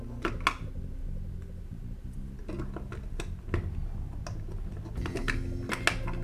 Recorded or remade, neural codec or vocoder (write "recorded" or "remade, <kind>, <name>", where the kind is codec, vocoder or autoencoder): recorded